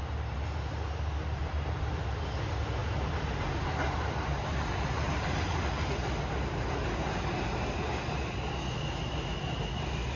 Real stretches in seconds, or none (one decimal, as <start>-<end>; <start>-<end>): 0.0-1.4; 1.9-2.8; 6.1-10.2